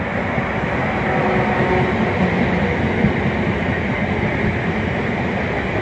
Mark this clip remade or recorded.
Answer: recorded